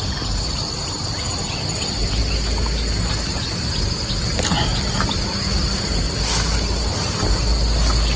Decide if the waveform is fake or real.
real